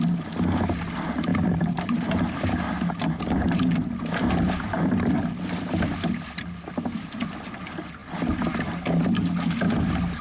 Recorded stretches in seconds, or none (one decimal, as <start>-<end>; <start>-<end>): 0.0-1.3; 5.1-10.2

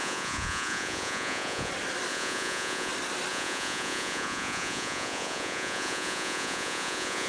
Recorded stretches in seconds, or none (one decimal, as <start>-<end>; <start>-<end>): 1.7-2.1; 2.9-3.3

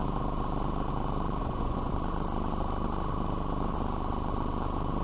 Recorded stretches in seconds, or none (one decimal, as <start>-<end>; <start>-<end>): 0.0-1.4; 1.9-5.0